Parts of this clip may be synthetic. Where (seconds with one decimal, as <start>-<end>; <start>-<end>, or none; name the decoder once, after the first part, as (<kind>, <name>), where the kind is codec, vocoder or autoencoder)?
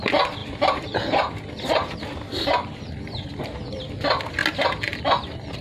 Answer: 0.4-3.8 (vocoder, BigVGAN v2)